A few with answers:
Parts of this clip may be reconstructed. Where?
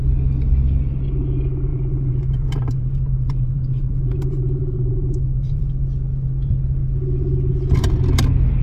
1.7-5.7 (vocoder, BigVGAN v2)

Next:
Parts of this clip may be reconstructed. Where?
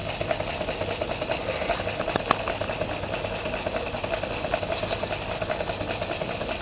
none